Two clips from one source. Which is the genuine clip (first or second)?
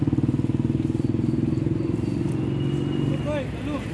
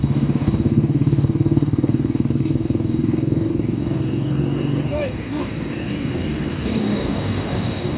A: first